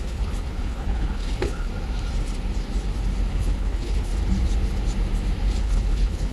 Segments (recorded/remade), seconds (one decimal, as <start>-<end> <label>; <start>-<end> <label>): 0.0-1.7 remade; 1.7-3.3 recorded; 3.3-4.1 remade; 4.1-5.6 recorded; 5.6-6.3 remade